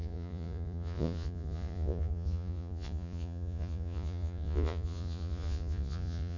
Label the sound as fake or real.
fake